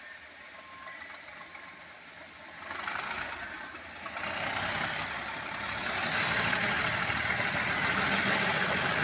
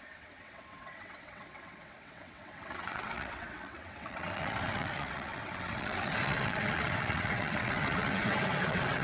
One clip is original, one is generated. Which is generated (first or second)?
second